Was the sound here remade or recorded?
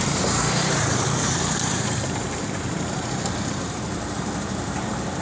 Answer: remade